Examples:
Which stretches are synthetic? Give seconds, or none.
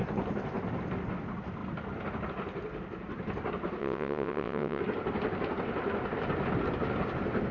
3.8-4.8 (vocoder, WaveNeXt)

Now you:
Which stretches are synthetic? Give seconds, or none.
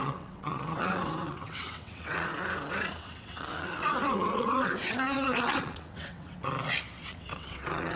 0.0-2.3 (vocoder, WaveNeXt); 3.0-6.5; 7.0-8.0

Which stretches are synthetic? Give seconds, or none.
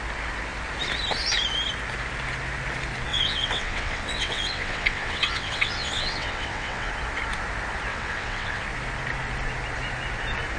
3.1-6.9 (vocoder, WaveNeXt); 7.9-8.6